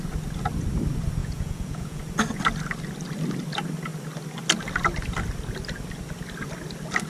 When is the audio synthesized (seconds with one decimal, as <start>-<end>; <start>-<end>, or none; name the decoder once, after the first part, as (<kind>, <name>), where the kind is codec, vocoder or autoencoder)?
1.2-2.0 (vocoder, Vocos)